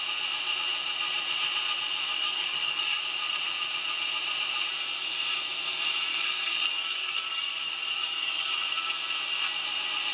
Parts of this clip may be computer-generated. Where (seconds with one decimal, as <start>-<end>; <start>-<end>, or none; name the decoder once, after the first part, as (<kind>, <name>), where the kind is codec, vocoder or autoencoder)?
2.1-3.0 (codec, DAC); 6.1-8.5